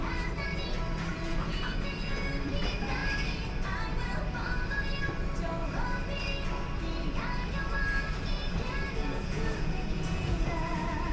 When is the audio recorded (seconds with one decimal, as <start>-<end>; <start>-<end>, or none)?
0.0-1.1; 2.1-9.0

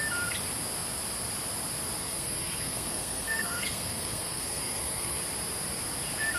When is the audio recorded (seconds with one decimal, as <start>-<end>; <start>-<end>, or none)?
0.0-2.0; 5.2-6.4

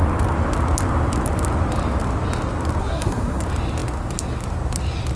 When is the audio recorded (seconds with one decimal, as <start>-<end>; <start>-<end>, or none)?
0.0-2.8; 3.4-5.2

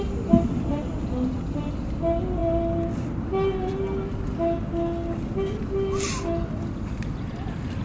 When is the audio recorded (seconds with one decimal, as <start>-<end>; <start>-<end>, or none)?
0.0-7.8

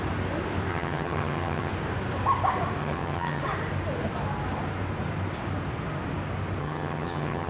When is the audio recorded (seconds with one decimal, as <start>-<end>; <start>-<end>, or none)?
0.0-0.7; 1.7-2.8; 3.4-6.6